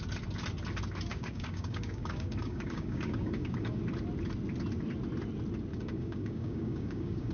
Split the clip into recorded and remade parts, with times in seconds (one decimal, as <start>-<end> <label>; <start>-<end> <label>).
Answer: 0.0-1.1 recorded; 1.1-3.8 remade; 3.8-5.7 recorded; 5.7-7.3 remade